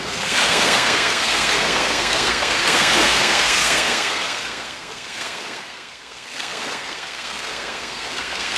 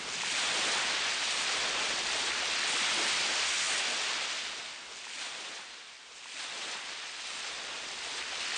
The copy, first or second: first